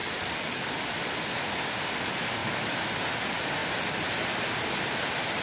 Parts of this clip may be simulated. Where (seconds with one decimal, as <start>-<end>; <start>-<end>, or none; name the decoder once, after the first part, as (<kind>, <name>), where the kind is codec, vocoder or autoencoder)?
2.4-3.0 (autoencoder, DAC-VAE)